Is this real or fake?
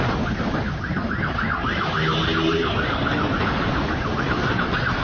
real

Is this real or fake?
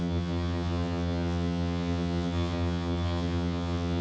fake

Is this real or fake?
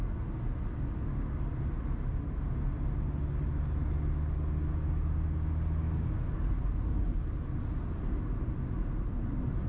real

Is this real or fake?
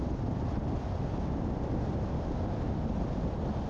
real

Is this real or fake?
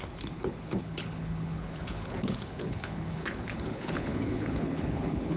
fake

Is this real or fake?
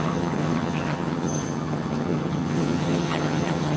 fake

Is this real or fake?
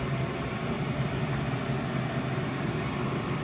real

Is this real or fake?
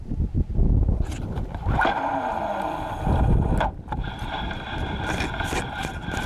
real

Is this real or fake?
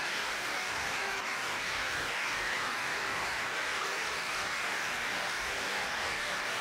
fake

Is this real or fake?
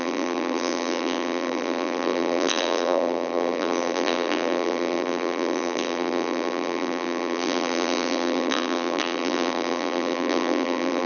fake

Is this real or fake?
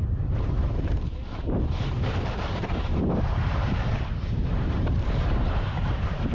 fake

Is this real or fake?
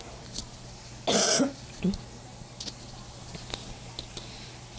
real